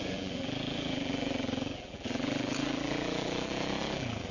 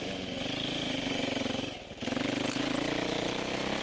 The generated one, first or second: first